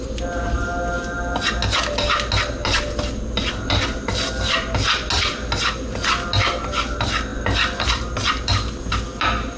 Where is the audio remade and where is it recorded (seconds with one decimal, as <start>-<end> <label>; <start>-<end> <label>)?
0.0-9.6 recorded